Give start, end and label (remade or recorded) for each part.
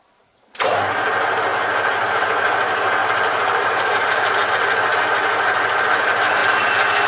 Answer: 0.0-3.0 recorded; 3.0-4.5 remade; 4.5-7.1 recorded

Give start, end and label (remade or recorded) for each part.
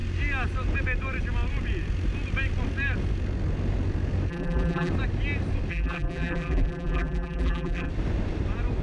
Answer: 0.0-4.3 recorded; 4.3-4.9 remade; 4.9-5.7 recorded; 5.7-7.9 remade; 7.9-8.8 recorded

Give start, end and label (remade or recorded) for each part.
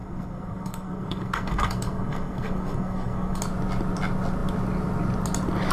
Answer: 0.0-3.4 remade; 3.4-5.7 recorded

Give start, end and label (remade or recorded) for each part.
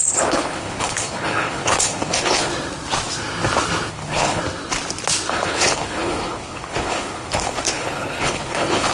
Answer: 0.0-2.5 remade; 2.5-3.9 recorded; 3.9-4.4 remade; 4.4-5.3 recorded; 5.3-8.9 remade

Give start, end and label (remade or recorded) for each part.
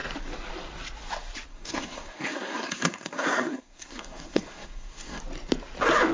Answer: 0.0-1.5 recorded; 1.5-5.2 remade; 5.2-6.1 recorded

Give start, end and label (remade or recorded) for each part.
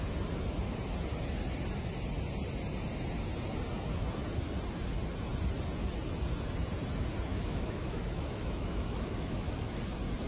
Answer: 0.0-7.3 recorded; 7.3-9.8 remade; 9.8-10.3 recorded